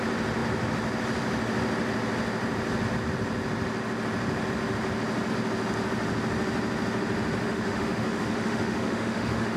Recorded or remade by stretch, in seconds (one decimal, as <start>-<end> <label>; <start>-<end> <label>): 0.0-7.4 recorded; 7.4-9.6 remade